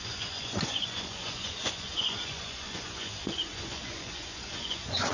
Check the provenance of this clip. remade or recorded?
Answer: remade